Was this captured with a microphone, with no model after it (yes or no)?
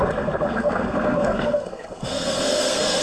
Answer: no